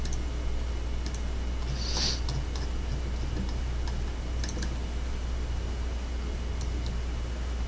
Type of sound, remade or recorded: recorded